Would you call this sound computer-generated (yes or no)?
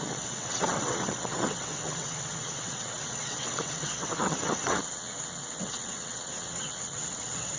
yes